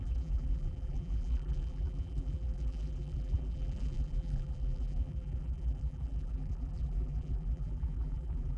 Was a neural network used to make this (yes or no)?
yes